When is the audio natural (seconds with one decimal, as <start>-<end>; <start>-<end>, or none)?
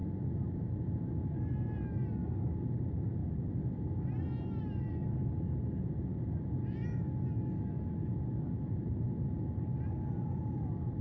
1.7-8.3; 8.8-11.0